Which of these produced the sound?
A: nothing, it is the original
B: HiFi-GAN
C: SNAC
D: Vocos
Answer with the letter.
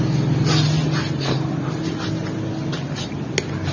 A